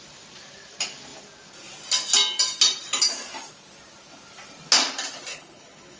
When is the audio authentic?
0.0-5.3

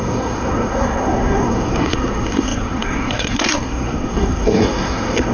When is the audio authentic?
none

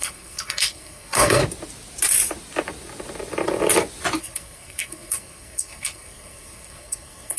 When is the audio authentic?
1.4-4.2

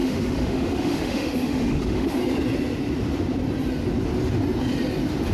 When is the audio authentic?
2.2-5.3

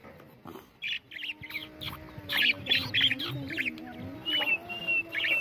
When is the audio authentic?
0.0-5.4

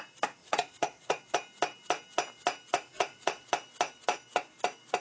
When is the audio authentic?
0.0-0.4; 1.2-2.7; 3.5-5.0

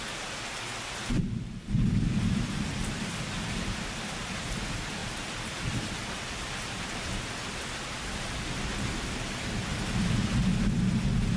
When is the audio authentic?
0.0-0.7; 4.1-5.0; 8.2-11.4